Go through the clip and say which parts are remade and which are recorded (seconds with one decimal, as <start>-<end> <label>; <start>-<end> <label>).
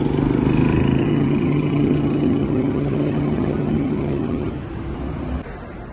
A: 0.0-1.0 recorded; 1.0-4.5 remade; 4.5-5.9 recorded